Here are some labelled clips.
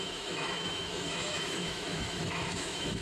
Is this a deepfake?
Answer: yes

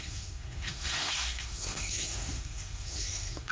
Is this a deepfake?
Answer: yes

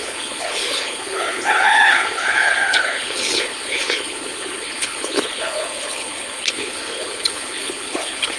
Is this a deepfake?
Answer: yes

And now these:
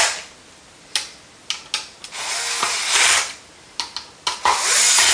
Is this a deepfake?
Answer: no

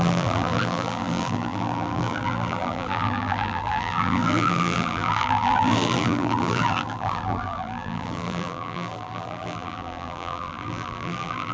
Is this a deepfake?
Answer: yes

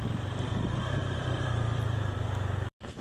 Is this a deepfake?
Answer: yes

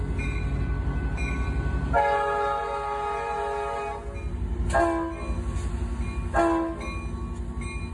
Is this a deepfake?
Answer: no